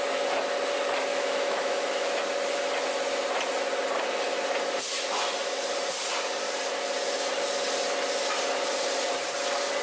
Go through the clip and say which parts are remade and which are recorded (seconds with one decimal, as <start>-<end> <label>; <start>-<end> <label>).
0.0-1.1 recorded; 1.1-2.2 remade; 2.2-9.8 recorded